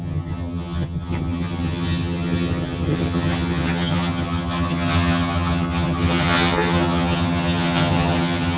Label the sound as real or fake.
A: fake